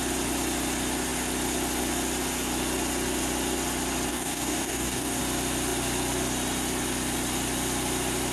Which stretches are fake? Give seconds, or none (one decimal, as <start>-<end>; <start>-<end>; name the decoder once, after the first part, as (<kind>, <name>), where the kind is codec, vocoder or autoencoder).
4.1-5.2 (codec, DAC)